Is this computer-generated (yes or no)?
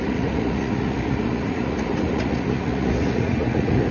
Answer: yes